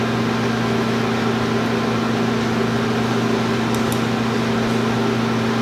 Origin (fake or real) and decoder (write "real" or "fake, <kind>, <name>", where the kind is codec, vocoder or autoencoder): real